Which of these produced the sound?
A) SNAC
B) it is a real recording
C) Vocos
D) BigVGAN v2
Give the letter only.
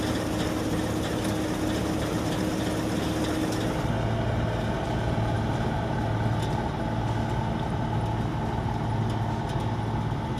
B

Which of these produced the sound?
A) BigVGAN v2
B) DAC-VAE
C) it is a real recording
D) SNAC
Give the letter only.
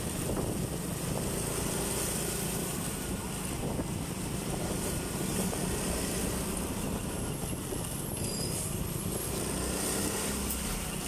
C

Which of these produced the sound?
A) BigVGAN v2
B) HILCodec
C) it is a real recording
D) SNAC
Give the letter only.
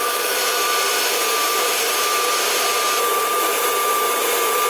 A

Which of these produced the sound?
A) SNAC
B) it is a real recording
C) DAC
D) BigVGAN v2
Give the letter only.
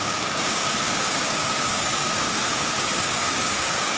C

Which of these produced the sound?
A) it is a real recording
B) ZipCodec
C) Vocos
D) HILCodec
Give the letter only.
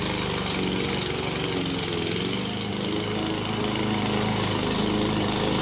A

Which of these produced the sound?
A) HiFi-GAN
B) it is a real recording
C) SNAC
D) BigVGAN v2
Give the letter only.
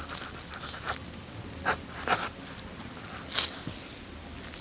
B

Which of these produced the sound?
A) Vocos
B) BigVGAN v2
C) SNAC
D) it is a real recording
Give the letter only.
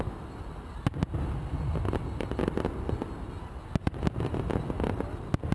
D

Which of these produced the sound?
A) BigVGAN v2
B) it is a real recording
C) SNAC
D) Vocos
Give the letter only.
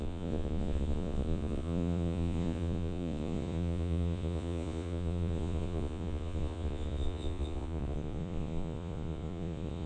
D